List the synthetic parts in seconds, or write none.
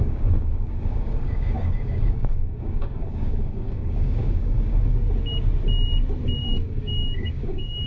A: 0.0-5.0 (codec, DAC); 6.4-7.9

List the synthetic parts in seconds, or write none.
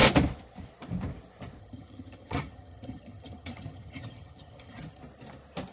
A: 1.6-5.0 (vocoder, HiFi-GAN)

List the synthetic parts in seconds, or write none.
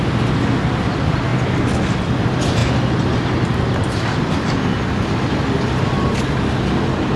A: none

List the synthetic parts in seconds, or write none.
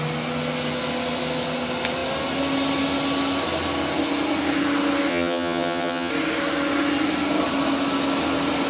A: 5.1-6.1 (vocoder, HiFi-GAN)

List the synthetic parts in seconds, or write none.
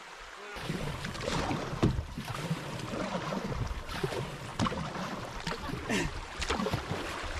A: 1.8-2.3 (vocoder, BigVGAN v2)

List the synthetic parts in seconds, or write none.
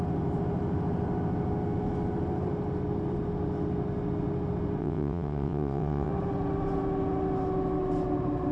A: 4.8-6.1 (vocoder, WaveNeXt)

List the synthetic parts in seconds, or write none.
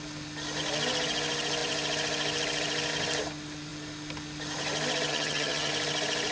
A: 5.1-5.7 (vocoder, HiFi-GAN)